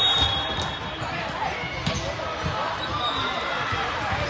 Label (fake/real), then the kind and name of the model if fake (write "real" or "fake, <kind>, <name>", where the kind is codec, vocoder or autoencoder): real